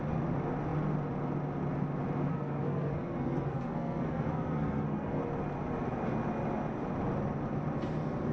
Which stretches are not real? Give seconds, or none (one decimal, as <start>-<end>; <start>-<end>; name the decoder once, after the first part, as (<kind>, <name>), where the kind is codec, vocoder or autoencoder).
2.3-5.2 (codec, SNAC)